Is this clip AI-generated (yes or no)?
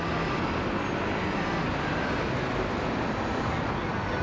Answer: no